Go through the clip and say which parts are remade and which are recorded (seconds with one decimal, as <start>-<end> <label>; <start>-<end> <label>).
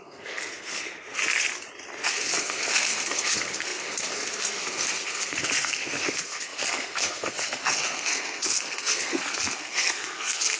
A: 0.0-1.2 remade; 1.2-2.1 recorded; 2.1-10.6 remade